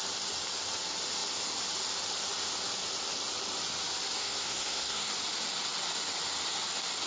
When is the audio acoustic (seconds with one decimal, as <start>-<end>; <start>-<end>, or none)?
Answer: 0.0-4.2; 5.1-7.1